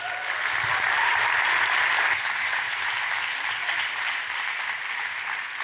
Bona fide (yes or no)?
yes